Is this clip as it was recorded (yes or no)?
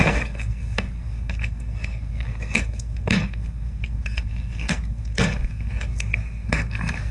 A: no